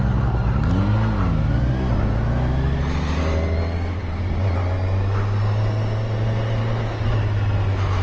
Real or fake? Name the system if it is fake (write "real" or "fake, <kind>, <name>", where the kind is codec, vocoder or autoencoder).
real